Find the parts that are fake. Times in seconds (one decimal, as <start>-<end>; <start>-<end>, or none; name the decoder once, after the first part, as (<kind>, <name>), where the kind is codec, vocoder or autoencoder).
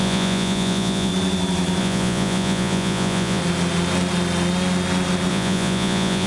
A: 0.0-1.1 (vocoder, Vocos); 1.8-3.4; 5.3-6.3